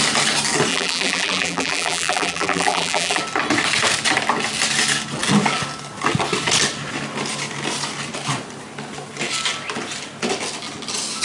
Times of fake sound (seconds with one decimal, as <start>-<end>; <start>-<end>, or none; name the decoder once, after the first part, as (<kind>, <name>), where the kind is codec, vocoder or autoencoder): 0.7-3.2 (vocoder, BigVGAN v2)